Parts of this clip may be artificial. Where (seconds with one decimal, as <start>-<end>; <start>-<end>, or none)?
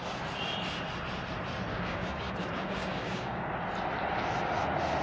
1.7-3.5